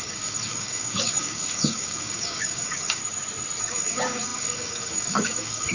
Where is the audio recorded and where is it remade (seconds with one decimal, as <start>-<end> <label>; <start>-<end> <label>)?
0.0-3.0 remade; 3.0-3.6 recorded; 3.6-5.7 remade